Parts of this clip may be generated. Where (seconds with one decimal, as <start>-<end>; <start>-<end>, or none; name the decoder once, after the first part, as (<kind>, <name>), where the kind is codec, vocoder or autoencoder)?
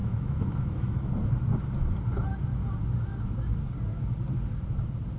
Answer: 0.0-1.1 (autoencoder, DAC-VAE)